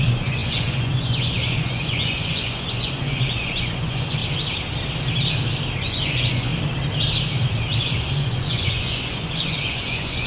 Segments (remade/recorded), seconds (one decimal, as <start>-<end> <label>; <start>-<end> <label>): 0.0-4.2 remade; 4.2-5.8 recorded; 5.8-6.5 remade; 6.5-7.8 recorded; 7.8-10.3 remade